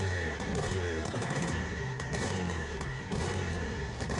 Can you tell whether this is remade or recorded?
remade